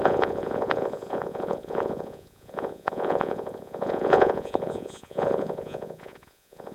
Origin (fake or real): fake